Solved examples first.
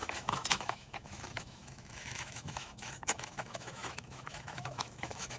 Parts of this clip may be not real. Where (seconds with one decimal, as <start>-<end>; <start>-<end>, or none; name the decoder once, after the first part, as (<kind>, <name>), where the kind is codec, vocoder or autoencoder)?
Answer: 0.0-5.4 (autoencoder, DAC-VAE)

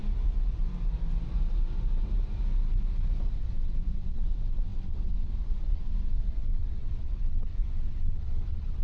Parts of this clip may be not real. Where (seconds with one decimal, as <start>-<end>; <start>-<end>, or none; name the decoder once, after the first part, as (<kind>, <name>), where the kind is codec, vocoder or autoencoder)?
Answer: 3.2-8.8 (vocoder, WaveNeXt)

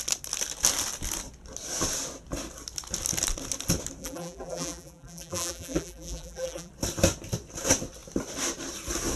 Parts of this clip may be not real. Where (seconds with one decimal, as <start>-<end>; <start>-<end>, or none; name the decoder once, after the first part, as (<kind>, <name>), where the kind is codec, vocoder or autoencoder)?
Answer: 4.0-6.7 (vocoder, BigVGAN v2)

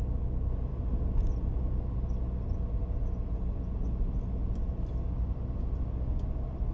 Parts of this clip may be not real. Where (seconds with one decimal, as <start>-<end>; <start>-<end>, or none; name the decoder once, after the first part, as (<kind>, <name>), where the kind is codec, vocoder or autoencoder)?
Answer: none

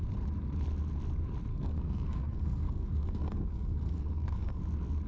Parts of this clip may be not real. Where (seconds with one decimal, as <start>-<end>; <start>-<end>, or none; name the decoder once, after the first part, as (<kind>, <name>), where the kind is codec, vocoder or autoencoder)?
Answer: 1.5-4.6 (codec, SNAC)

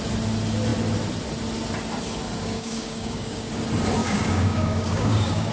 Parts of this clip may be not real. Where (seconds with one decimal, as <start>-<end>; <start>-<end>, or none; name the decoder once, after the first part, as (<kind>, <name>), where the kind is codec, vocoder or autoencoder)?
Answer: 2.4-3.5 (codec, DAC); 4.0-5.5

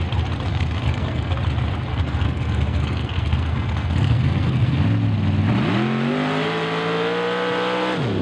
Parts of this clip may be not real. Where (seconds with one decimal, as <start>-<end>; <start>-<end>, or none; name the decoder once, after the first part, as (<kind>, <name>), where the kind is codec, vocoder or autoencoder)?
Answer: 0.5-1.3 (codec, SNAC); 1.9-4.8

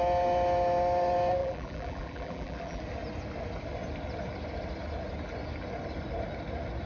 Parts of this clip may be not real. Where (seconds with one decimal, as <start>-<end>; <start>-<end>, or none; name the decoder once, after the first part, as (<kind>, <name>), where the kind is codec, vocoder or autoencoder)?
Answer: 1.4-2.8 (vocoder, BigVGAN v2)